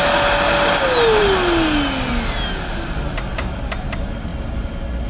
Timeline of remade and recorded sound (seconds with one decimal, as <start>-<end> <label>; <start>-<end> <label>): 0.0-5.1 recorded